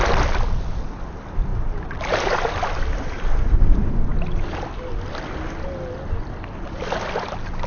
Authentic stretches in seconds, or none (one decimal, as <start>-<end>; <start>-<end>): 0.0-7.7